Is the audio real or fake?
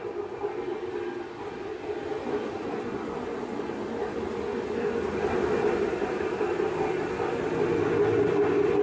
real